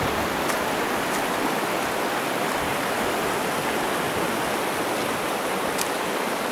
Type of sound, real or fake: real